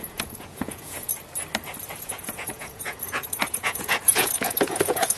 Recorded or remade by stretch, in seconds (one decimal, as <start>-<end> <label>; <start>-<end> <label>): 0.0-1.1 remade; 1.1-2.0 recorded; 2.0-5.2 remade